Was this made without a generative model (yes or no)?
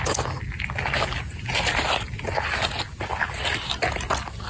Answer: yes